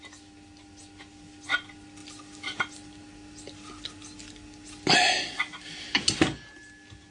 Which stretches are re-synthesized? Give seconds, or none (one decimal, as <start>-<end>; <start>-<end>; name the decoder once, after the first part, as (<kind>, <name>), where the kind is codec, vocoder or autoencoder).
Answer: none